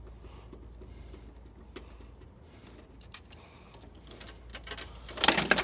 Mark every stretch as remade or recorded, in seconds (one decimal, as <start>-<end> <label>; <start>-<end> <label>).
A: 0.0-4.5 recorded; 4.5-5.6 remade